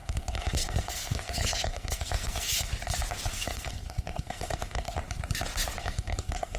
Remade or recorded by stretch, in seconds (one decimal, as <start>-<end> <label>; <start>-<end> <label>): 0.0-2.7 remade; 2.7-3.3 recorded; 3.3-5.0 remade; 5.0-5.8 recorded; 5.8-6.6 remade

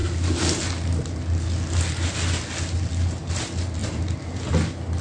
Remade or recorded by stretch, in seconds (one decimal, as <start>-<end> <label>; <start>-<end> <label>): 0.0-5.0 recorded

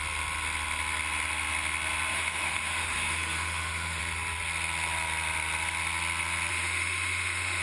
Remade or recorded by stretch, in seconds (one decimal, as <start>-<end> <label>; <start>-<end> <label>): 0.0-2.1 recorded; 2.1-4.0 remade; 4.0-6.5 recorded; 6.5-7.6 remade

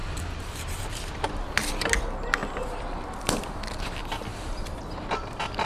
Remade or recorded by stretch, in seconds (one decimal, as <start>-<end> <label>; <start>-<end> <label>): 0.0-1.7 remade; 1.7-2.4 recorded; 2.4-4.8 remade; 4.8-5.7 recorded

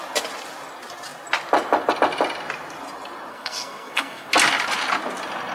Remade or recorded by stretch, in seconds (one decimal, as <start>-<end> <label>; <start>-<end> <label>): 0.0-3.3 recorded; 3.3-4.3 remade; 4.3-5.5 recorded

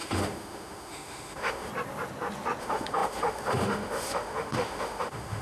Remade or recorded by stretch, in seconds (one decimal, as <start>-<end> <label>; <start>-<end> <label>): 0.0-1.7 remade; 1.7-2.6 recorded; 2.6-5.4 remade

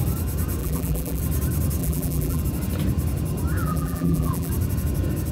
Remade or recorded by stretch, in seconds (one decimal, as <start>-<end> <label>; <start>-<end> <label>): 0.0-0.6 recorded; 0.6-1.2 remade; 1.2-1.8 recorded; 1.8-2.4 remade; 2.4-3.6 recorded; 3.6-4.5 remade; 4.5-5.3 recorded